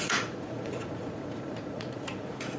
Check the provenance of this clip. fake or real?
fake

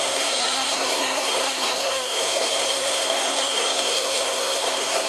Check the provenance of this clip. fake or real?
fake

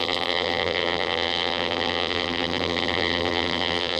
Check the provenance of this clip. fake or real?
fake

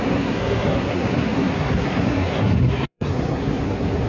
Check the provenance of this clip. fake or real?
fake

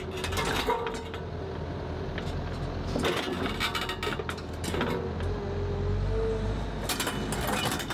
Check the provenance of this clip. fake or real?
real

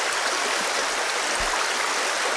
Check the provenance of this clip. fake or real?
real